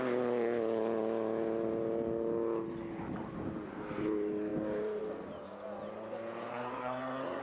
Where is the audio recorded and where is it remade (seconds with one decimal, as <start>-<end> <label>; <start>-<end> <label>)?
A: 0.0-6.5 recorded; 6.5-7.4 remade